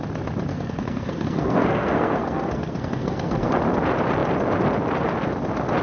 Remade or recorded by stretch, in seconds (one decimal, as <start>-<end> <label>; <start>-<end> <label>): 0.0-0.5 recorded; 0.5-3.6 remade; 3.6-5.8 recorded